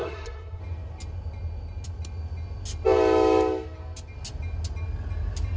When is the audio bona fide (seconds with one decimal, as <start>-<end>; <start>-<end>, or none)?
0.6-5.6